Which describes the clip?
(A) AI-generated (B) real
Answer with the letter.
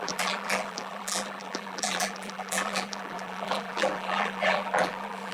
A